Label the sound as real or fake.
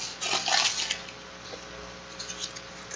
real